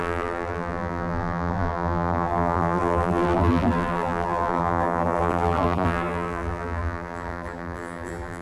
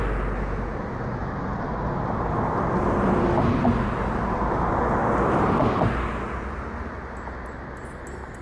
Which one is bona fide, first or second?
second